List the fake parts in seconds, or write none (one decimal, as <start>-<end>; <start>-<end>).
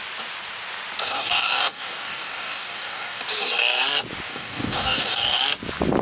1.0-3.2; 4.3-5.4